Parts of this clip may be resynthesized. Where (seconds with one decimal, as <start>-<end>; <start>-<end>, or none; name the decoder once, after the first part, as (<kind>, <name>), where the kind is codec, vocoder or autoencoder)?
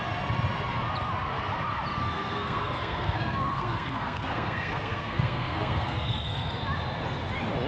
2.0-6.5 (codec, SNAC)